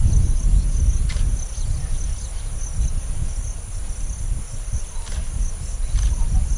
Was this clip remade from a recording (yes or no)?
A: no